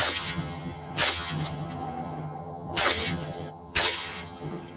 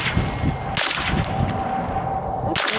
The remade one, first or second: first